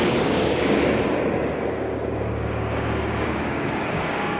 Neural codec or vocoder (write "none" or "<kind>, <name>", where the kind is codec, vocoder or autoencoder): codec, DAC